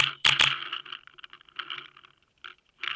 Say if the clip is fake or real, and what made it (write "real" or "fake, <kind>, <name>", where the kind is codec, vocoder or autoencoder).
real